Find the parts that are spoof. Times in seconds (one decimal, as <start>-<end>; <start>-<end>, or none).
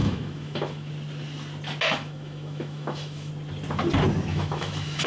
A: 0.0-0.9; 2.0-3.3; 4.3-5.1